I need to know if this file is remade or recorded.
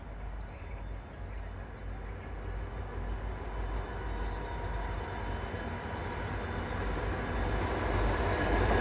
recorded